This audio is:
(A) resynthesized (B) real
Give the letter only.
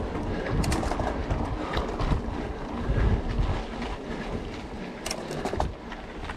B